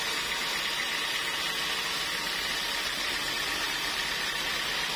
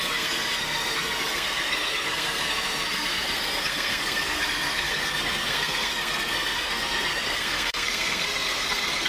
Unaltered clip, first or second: first